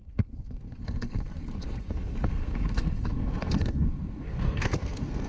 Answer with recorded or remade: remade